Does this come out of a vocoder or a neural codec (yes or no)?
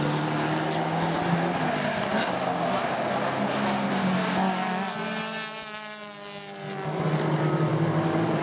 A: no